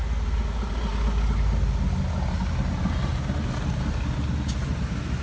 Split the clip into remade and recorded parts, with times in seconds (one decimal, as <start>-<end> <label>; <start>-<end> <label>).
0.0-5.2 recorded